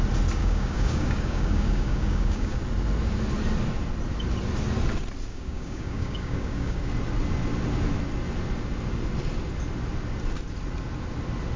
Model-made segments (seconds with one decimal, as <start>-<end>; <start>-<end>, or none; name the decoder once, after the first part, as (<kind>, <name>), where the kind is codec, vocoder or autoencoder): 0.4-2.6 (codec, DAC); 5.3-6.9